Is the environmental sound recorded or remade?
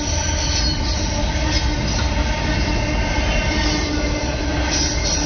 recorded